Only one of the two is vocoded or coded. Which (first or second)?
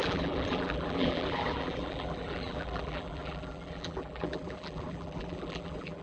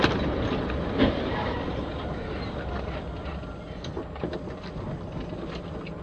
first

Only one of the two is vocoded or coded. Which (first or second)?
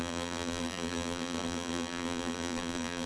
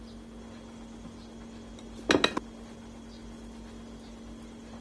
first